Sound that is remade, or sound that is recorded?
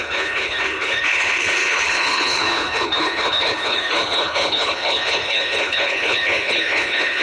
remade